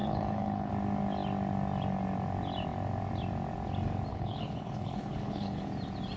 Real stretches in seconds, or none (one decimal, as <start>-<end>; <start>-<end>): 0.7-4.1; 5.6-6.2